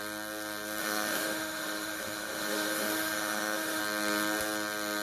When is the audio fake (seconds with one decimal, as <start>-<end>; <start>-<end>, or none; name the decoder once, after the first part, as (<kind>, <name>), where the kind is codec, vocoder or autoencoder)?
0.8-3.8 (autoencoder, DAC-VAE)